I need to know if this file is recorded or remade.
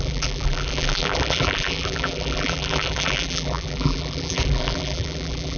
remade